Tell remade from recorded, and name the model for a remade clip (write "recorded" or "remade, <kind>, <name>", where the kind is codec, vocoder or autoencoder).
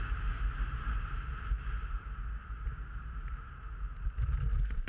recorded